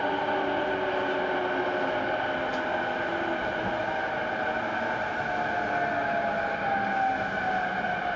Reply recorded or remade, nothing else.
recorded